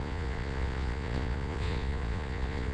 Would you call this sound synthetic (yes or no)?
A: yes